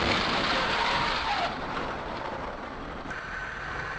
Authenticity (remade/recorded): remade